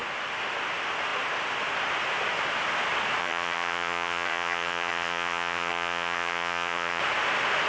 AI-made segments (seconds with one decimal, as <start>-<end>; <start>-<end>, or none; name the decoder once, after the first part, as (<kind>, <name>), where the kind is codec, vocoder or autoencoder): 3.2-7.0 (vocoder, HiFi-GAN)